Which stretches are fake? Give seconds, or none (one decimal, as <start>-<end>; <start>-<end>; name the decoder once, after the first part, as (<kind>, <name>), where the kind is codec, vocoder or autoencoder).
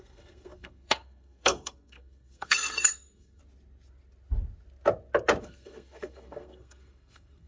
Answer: 0.0-3.4 (codec, SNAC); 5.4-7.5